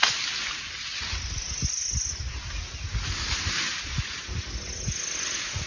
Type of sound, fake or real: real